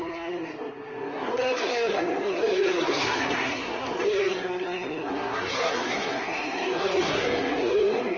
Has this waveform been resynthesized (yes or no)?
yes